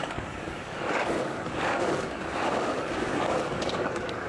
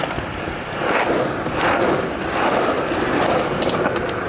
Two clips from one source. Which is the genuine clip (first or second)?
second